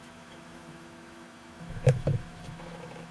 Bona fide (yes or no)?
no